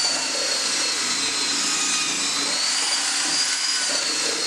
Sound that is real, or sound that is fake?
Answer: real